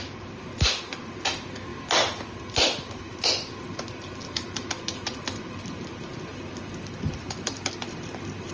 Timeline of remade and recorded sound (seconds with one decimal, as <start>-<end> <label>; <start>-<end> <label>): 0.0-6.3 recorded; 6.3-7.9 remade; 7.9-8.5 recorded